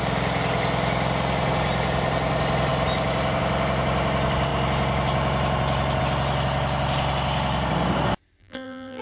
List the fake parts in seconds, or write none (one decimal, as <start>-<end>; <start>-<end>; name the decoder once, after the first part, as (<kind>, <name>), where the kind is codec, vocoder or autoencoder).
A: 8.4-9.0 (vocoder, BigVGAN v2)